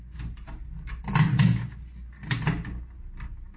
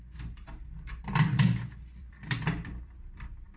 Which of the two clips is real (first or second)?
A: first